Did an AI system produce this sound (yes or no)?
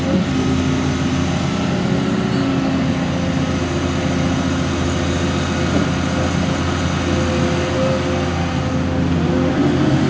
no